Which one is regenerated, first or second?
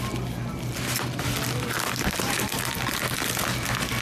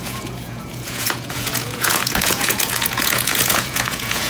second